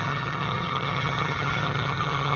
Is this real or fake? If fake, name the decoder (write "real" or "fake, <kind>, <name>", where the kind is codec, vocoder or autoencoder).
fake, vocoder, HiFi-GAN